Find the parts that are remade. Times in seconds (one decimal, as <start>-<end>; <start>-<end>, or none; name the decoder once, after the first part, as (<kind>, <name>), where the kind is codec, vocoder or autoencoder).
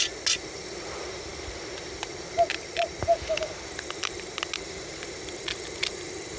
none